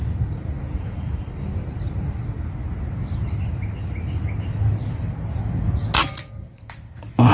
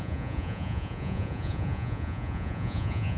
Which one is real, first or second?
first